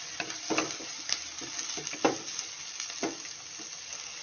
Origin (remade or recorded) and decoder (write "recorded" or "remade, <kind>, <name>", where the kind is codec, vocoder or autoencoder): recorded